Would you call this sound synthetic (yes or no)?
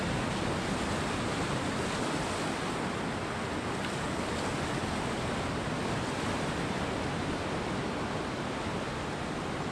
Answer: no